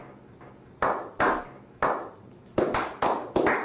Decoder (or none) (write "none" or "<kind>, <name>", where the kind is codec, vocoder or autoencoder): none